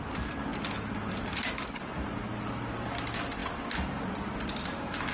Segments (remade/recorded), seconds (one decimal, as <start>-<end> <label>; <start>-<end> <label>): 0.0-5.1 recorded